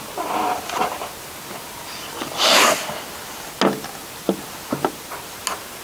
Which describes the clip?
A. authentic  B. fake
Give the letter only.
A